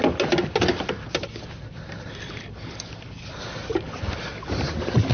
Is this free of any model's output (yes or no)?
yes